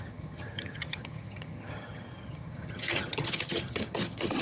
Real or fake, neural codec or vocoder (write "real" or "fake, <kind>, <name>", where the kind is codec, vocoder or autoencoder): fake, vocoder, HiFi-GAN